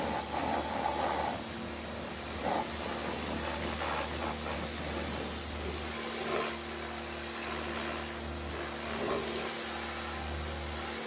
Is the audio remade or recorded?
recorded